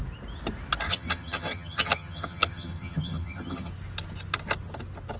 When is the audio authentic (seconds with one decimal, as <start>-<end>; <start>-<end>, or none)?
0.0-0.9; 3.7-5.2